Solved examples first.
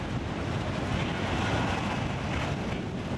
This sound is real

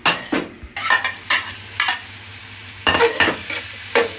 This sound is real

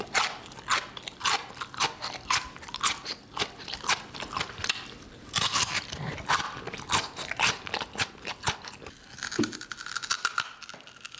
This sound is real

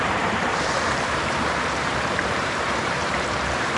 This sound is fake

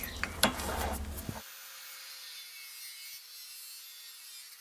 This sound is real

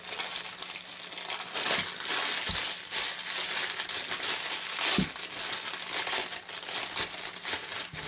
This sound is real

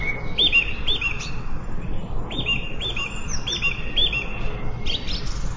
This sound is real